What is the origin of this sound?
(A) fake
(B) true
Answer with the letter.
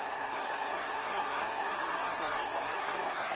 A